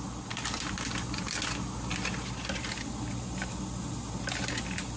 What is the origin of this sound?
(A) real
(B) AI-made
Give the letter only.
A